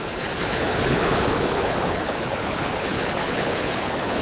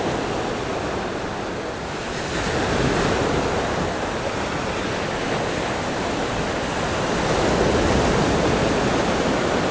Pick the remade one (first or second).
first